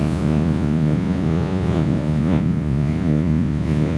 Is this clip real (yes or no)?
no